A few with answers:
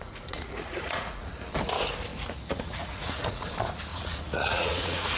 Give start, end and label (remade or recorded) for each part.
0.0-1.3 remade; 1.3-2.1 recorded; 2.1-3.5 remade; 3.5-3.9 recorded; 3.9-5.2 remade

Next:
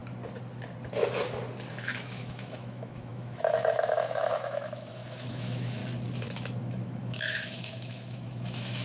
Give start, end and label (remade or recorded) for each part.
0.0-1.7 recorded; 1.7-5.8 remade; 5.8-6.6 recorded; 6.6-8.8 remade

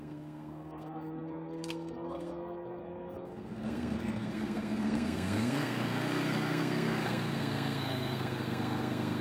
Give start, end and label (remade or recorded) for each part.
0.0-9.2 remade

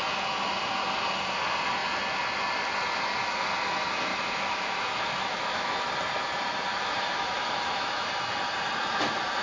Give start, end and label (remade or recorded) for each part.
0.0-4.1 recorded; 4.1-5.7 remade; 5.7-6.7 recorded; 6.7-8.1 remade; 8.1-9.4 recorded

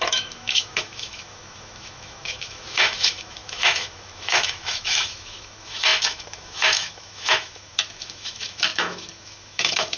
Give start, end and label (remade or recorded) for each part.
0.0-10.0 remade

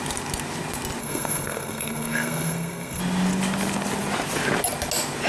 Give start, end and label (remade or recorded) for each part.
0.0-1.0 recorded; 1.0-3.0 remade; 3.0-5.3 recorded

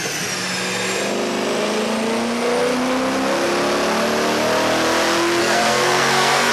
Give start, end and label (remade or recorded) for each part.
0.0-5.4 recorded; 5.4-6.5 remade